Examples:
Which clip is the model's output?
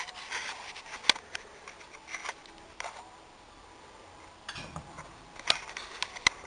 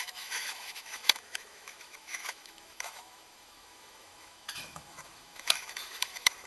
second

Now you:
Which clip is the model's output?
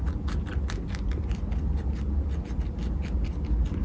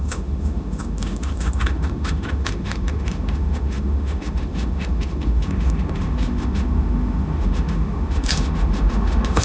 second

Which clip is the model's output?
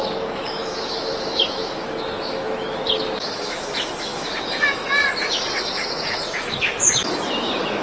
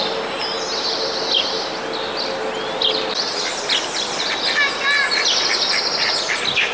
first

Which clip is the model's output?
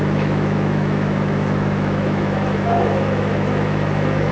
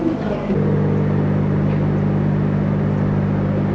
first